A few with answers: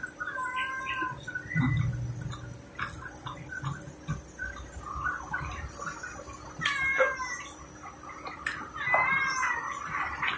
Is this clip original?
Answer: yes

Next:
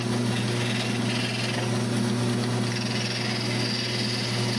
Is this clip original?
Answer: yes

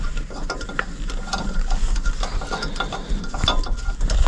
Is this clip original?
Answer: yes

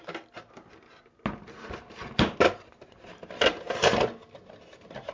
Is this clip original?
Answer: yes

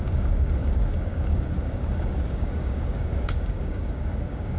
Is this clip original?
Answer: no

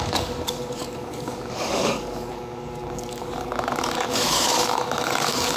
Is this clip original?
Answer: no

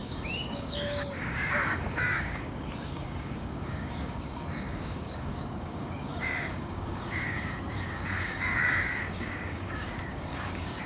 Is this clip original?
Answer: no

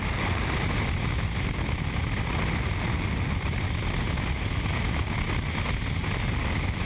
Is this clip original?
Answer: yes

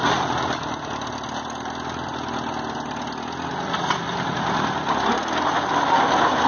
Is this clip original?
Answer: yes